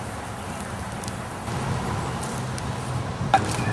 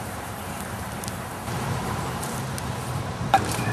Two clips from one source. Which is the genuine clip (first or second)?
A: first